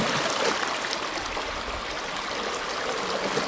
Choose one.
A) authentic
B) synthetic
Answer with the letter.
A